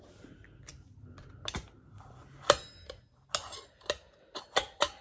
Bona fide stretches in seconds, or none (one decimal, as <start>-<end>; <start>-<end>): 0.0-5.0